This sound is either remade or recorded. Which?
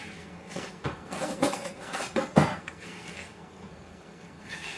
remade